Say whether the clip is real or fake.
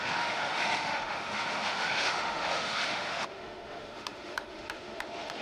fake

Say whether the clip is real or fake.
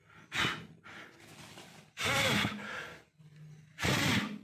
real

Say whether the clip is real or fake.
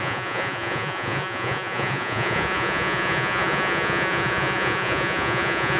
fake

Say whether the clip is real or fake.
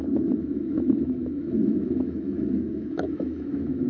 fake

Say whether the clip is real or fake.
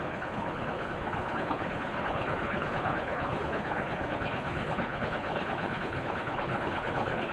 fake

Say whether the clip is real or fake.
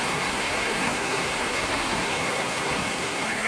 fake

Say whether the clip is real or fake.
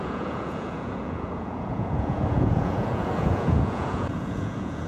fake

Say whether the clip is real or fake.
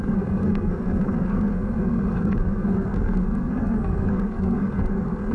fake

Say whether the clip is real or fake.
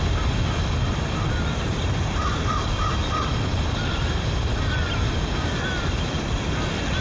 real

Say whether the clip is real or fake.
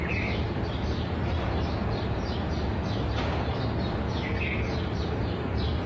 fake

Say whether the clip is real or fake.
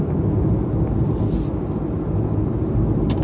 real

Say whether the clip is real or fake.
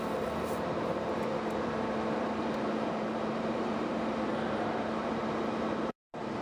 fake